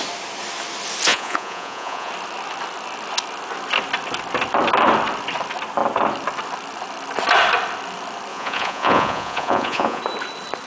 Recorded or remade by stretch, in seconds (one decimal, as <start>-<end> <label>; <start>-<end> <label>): 0.0-1.1 recorded; 1.1-2.1 remade; 2.1-8.3 recorded; 8.3-10.0 remade; 10.0-10.7 recorded